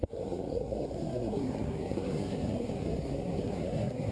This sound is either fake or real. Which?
fake